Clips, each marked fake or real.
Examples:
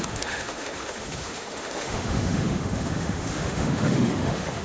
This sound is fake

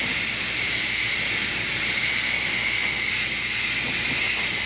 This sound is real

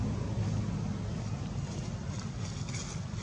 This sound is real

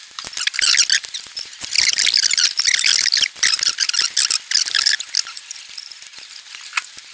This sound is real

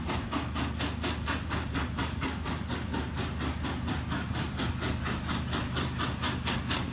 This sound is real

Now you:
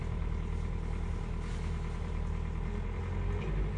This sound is real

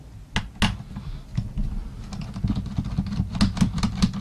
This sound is real